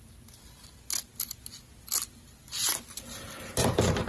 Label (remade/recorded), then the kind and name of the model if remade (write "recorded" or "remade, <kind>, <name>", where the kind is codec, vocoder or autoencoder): recorded